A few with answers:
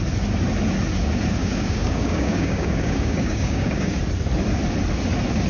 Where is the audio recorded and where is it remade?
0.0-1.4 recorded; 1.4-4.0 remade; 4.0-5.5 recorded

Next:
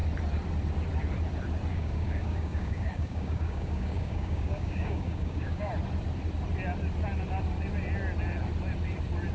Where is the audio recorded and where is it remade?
0.0-1.7 recorded; 1.7-5.7 remade; 5.7-9.3 recorded

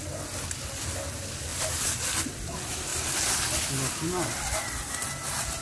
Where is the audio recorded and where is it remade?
0.0-5.6 recorded